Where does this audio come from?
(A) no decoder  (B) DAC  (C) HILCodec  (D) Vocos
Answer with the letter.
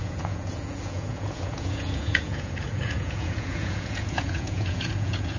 D